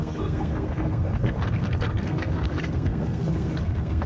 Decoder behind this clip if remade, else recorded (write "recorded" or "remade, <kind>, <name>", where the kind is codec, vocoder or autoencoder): remade, codec, SNAC